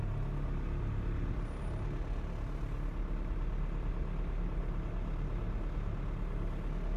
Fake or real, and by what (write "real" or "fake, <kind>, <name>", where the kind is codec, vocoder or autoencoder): real